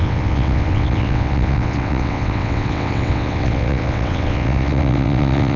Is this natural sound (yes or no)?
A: no